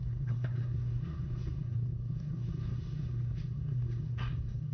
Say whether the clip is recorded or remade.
remade